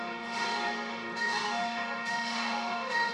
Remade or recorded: remade